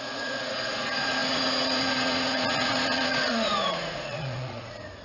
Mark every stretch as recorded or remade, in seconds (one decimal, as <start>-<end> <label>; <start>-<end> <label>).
0.0-5.0 remade